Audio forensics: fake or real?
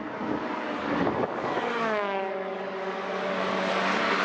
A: fake